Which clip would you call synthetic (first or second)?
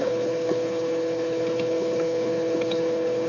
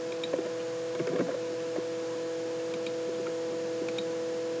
first